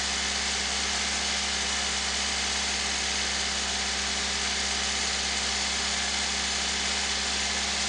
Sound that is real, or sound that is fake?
real